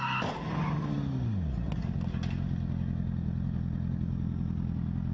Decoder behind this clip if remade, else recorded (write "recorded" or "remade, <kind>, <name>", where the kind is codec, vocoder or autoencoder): recorded